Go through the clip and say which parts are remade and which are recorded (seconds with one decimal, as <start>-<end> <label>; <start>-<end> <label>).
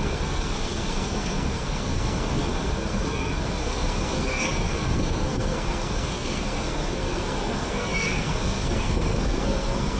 0.0-10.0 remade